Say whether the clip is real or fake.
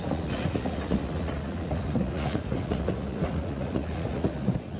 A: fake